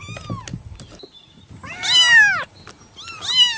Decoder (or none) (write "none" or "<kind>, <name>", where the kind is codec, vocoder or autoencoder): none